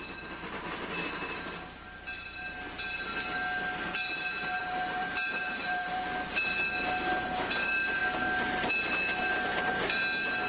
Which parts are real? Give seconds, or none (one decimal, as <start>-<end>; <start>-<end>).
0.0-4.6; 6.0-9.5; 10.0-10.5